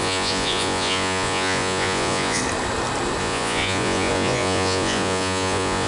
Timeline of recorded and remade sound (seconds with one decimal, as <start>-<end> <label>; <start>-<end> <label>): 0.0-2.4 remade; 2.4-3.2 recorded; 3.2-5.9 remade